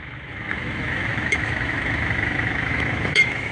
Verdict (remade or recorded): remade